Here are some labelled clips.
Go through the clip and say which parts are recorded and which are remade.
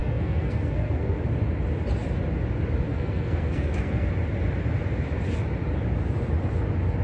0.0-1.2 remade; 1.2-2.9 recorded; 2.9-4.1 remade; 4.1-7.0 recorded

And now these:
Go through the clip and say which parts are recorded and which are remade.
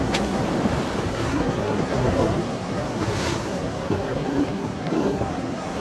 0.0-0.4 remade; 0.4-1.1 recorded; 1.1-5.8 remade